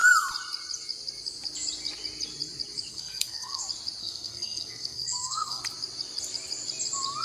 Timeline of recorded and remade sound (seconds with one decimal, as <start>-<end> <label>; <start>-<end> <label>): 0.0-2.9 recorded; 2.9-3.6 remade; 3.6-4.0 recorded; 4.0-5.6 remade; 5.6-7.2 recorded